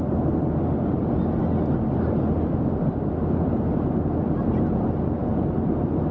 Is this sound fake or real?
real